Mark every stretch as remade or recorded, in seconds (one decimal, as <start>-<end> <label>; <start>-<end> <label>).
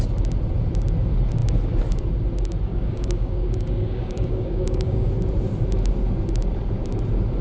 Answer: 0.0-2.7 recorded; 2.7-5.1 remade; 5.1-7.4 recorded